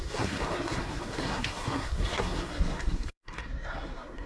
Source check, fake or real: fake